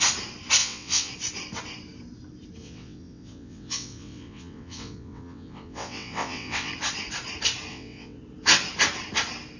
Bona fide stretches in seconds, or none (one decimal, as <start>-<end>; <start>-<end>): 0.0-0.6; 1.1-2.6; 6.7-7.7; 8.2-9.6